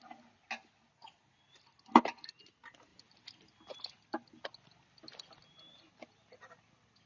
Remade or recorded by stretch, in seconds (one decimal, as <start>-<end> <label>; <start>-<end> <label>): 0.0-7.1 recorded